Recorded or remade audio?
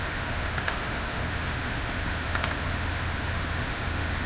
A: remade